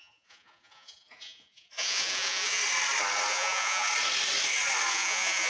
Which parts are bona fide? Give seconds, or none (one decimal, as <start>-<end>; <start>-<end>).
2.6-3.3; 3.9-4.9